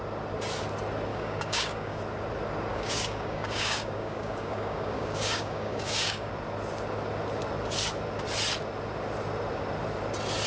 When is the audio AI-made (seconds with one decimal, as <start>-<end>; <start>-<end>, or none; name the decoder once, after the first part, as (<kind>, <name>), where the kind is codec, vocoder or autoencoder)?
1.1-2.0 (codec, DAC); 2.7-6.3